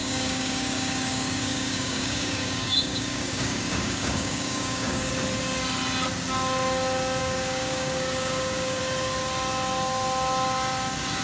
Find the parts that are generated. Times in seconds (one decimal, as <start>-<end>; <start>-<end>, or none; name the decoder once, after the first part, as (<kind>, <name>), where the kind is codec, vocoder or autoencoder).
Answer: 0.0-5.1 (codec, DAC); 7.2-8.8